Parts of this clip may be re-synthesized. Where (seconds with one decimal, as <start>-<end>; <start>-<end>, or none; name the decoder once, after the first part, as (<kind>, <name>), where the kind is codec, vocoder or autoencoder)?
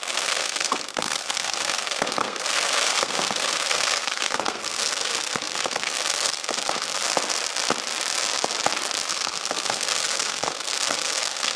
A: 0.0-7.0 (codec, SNAC); 9.1-11.6